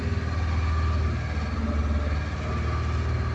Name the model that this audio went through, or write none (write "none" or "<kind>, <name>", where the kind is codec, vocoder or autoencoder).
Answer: none